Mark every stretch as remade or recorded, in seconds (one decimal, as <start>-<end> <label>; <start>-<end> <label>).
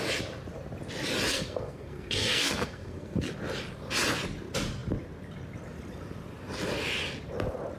0.0-1.3 recorded; 1.3-3.3 remade; 3.3-7.8 recorded